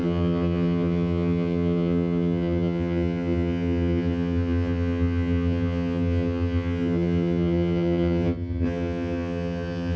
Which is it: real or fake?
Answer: fake